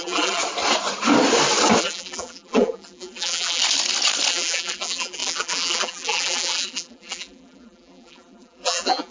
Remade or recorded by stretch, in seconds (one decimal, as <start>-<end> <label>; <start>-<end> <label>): 0.0-0.4 remade; 0.4-1.8 recorded; 1.8-3.6 remade; 3.6-4.3 recorded; 4.3-9.1 remade

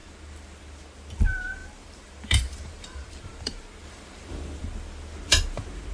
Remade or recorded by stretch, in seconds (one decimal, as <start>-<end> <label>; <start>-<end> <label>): 0.0-1.6 recorded; 1.6-4.3 remade; 4.3-5.9 recorded